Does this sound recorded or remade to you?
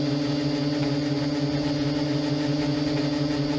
recorded